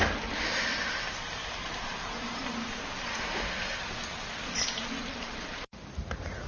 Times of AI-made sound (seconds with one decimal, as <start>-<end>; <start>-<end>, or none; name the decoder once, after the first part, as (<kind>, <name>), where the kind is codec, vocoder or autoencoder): 1.4-3.2 (vocoder, BigVGAN v2); 5.0-5.9